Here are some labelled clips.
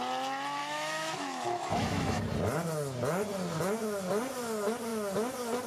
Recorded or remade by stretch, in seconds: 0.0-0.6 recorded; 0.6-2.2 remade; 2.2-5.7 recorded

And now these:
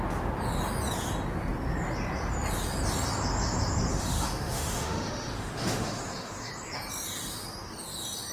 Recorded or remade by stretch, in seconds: 0.0-3.9 recorded; 3.9-6.5 remade; 6.5-8.3 recorded

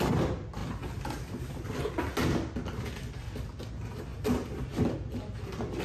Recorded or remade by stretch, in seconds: 0.0-5.8 recorded

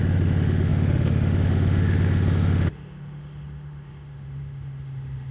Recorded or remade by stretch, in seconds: 0.0-5.3 remade

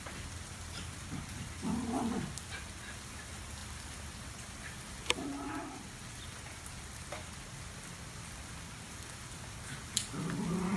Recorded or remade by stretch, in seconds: 0.0-10.8 recorded

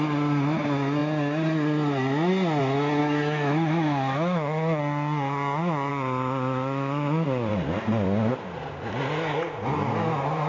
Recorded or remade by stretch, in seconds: 0.0-3.0 recorded; 3.0-4.8 remade; 4.8-5.9 recorded; 5.9-7.5 remade; 7.5-10.5 recorded